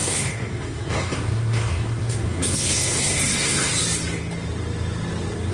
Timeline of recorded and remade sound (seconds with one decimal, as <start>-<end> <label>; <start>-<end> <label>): 0.0-3.7 remade; 3.7-5.5 recorded